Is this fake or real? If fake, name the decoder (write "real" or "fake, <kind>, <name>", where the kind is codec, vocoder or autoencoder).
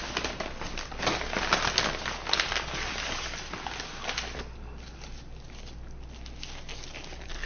real